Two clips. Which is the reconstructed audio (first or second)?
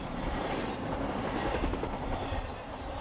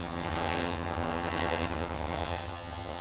second